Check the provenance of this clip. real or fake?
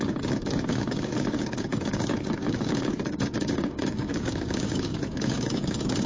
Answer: fake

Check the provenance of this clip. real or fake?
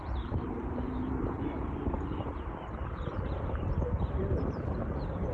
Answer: fake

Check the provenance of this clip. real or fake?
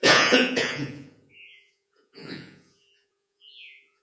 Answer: fake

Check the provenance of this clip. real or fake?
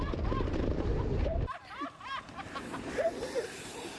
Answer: real